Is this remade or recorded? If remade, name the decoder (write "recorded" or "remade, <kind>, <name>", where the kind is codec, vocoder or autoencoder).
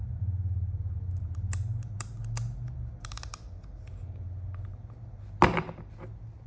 recorded